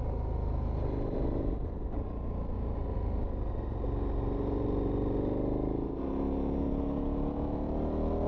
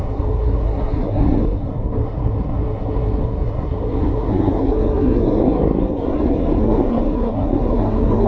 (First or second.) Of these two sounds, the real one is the first